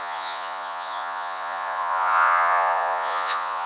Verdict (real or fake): fake